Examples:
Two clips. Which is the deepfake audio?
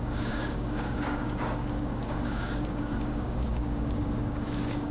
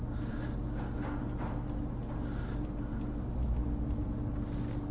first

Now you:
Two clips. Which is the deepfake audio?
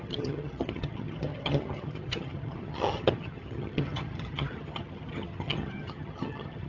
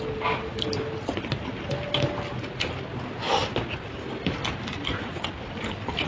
first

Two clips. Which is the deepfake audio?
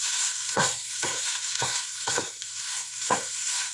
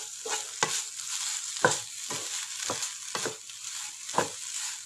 first